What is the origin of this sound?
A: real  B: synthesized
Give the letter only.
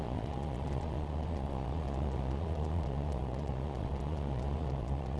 B